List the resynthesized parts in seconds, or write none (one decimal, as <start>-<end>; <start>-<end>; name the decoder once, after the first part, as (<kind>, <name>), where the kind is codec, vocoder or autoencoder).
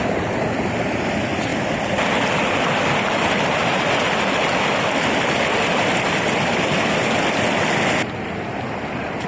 none